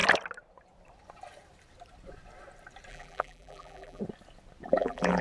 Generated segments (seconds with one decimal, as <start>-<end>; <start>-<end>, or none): 2.9-4.0; 4.7-5.2